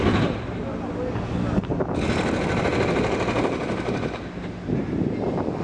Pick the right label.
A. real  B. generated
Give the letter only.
A